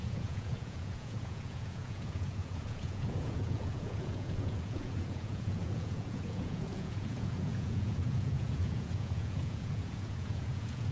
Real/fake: fake